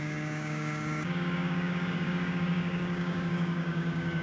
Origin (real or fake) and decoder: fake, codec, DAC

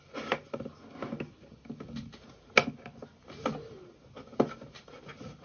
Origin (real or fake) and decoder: real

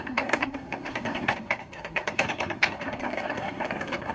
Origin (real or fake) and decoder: fake, codec, SNAC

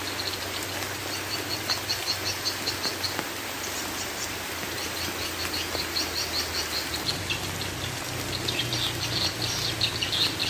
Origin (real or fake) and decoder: real